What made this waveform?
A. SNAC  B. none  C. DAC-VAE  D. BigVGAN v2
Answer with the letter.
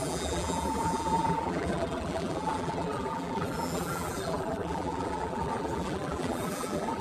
D